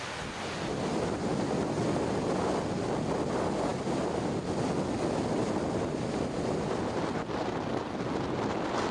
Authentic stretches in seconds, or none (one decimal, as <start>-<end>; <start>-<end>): 0.0-8.9